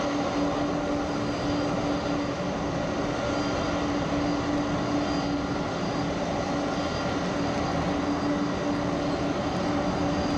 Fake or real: real